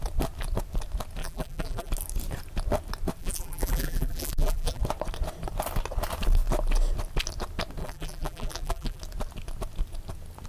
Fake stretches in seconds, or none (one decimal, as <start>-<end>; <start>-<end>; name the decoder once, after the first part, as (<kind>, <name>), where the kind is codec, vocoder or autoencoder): 1.2-1.9 (vocoder, BigVGAN v2); 3.2-4.8; 7.8-9.0